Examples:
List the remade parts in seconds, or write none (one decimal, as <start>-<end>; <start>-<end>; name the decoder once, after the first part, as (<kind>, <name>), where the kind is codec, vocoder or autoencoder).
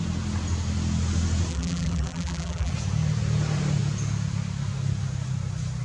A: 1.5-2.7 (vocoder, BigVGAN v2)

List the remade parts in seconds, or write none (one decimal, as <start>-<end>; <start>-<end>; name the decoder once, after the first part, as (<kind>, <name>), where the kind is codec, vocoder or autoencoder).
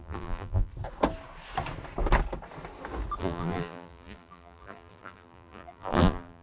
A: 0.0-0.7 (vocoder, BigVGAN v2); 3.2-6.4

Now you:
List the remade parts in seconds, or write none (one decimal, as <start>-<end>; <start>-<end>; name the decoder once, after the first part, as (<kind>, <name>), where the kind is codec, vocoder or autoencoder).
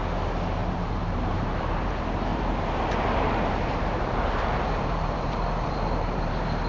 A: 0.6-1.9 (vocoder, BigVGAN v2); 2.3-6.3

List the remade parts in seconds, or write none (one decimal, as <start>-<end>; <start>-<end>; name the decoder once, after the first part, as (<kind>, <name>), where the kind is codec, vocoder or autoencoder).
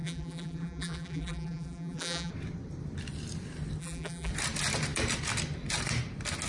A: 0.0-2.3 (vocoder, BigVGAN v2); 3.8-4.3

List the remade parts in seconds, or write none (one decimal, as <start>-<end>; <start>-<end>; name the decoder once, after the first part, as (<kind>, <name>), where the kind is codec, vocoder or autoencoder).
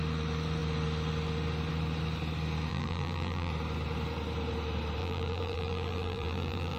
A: 2.7-3.5 (vocoder, BigVGAN v2); 5.0-6.8